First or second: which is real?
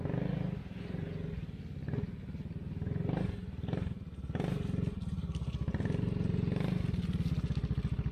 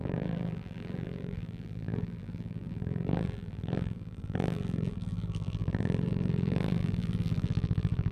first